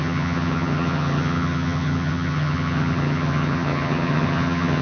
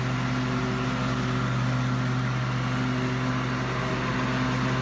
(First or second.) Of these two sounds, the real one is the second